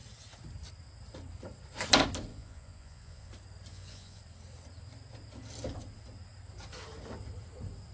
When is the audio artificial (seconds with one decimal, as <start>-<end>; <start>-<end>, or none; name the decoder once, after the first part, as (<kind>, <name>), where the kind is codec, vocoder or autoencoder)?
2.3-3.3 (vocoder, Vocos); 3.7-4.2